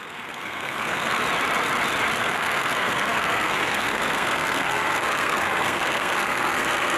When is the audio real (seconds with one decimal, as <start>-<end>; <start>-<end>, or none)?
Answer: 1.2-2.2